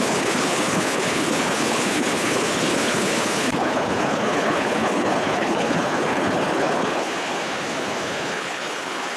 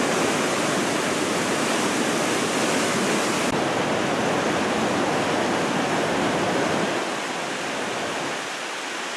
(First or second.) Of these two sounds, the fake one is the first